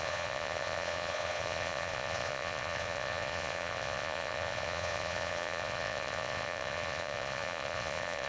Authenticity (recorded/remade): remade